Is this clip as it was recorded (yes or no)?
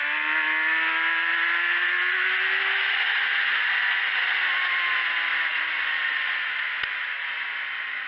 yes